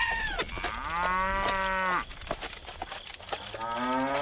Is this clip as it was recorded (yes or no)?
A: yes